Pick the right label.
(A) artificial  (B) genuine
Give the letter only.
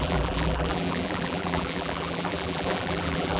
A